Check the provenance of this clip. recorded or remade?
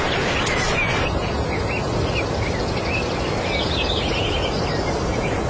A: recorded